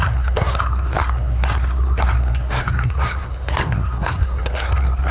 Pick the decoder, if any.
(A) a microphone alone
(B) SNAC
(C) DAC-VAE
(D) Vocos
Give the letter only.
B